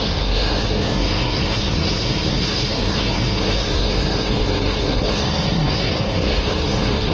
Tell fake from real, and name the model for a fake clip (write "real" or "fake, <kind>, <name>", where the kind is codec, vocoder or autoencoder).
fake, codec, SNAC